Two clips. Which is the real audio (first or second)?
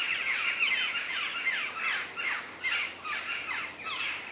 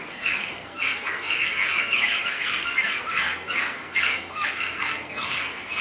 first